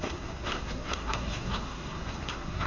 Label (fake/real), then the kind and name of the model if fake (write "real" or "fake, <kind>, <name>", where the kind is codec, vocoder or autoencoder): fake, codec, SNAC